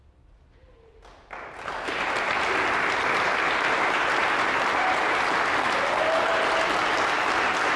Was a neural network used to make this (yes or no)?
no